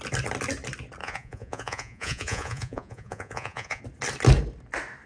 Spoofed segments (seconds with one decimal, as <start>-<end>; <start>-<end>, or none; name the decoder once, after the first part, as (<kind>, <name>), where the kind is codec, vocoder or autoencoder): 1.0-3.8 (vocoder, Vocos)